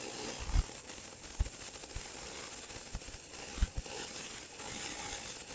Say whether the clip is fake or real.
real